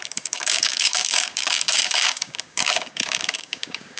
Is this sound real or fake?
fake